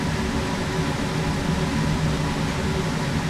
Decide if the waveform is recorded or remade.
recorded